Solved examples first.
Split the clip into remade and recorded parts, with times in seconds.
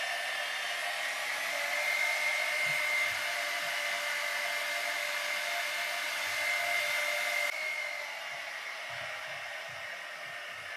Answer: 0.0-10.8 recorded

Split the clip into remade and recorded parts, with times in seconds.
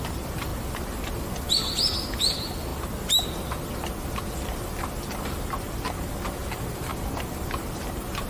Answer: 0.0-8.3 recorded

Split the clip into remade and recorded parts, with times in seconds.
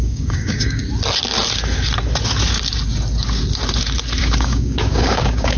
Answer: 0.0-0.8 remade; 0.8-4.2 recorded; 4.2-5.6 remade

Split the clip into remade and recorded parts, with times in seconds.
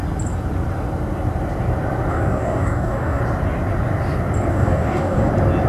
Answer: 0.0-2.1 recorded; 2.1-3.2 remade; 3.2-4.5 recorded; 4.5-5.3 remade; 5.3-5.7 recorded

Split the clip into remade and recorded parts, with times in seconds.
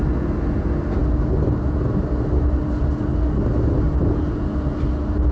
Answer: 0.0-5.3 recorded